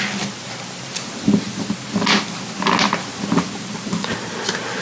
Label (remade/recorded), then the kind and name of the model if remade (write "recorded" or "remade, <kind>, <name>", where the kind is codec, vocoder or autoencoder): recorded